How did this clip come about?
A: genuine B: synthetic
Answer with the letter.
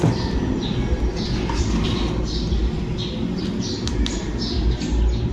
A